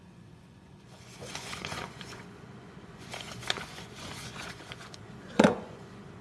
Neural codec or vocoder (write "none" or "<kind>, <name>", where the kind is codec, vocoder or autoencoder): vocoder, Vocos